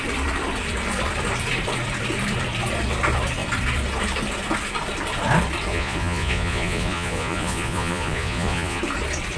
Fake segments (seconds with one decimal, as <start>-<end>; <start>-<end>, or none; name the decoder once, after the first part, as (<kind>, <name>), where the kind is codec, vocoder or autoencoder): 5.7-8.8 (vocoder, Vocos)